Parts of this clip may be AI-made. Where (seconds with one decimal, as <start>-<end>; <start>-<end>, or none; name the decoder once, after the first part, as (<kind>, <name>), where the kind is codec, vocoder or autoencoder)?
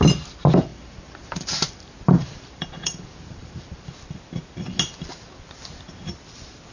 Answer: 0.7-3.9 (vocoder, BigVGAN v2)